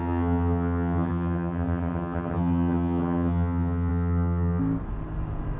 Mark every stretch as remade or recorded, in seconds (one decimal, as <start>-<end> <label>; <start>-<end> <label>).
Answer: 0.0-4.6 remade; 4.6-5.6 recorded